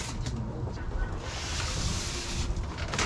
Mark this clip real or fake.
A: real